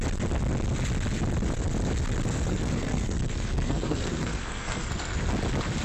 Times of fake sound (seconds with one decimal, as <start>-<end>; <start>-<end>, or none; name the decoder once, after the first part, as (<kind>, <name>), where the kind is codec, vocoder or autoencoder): 2.5-5.3 (codec, SNAC)

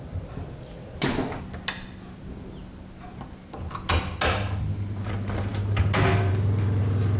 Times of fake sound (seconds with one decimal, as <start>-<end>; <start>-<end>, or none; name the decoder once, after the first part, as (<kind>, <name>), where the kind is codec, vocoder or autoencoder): none

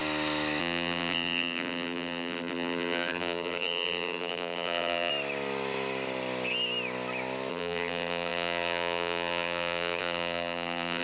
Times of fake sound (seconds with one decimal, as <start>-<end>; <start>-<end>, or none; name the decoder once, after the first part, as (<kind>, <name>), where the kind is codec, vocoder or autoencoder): 0.6-5.1 (vocoder, BigVGAN v2); 7.5-11.0

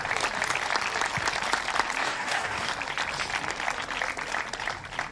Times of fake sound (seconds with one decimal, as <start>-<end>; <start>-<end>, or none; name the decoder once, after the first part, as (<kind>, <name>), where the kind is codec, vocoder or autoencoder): 2.0-2.7 (codec, DAC)